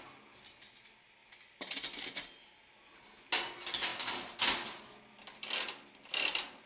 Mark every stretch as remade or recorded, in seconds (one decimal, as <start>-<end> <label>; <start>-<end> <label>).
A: 0.0-6.7 recorded